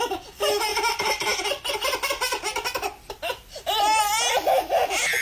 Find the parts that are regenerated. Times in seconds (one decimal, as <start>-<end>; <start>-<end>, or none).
none